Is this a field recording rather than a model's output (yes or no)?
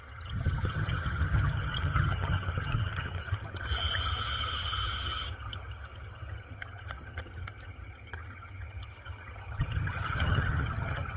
no